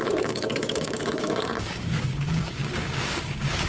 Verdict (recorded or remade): remade